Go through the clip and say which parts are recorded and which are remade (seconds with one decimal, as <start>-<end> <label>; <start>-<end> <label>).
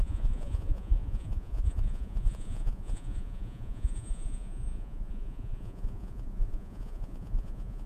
0.0-7.9 remade